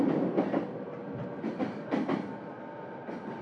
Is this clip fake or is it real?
real